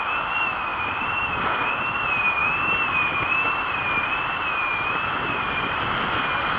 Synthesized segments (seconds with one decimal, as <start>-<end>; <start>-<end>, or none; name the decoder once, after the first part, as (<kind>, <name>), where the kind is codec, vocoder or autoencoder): 0.7-1.3 (vocoder, BigVGAN v2)